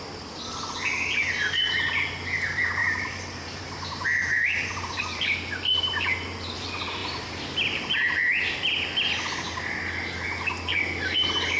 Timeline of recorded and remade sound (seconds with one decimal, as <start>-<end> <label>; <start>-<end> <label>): 0.0-2.8 recorded; 2.8-5.0 remade; 5.0-7.0 recorded; 7.0-8.0 remade; 8.0-11.6 recorded